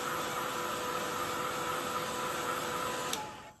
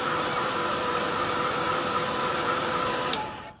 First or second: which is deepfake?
second